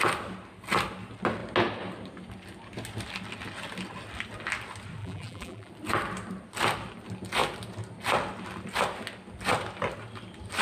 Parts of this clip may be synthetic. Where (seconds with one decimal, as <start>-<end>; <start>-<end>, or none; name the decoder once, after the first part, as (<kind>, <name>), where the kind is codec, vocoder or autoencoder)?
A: 5.0-5.7 (vocoder, BigVGAN v2)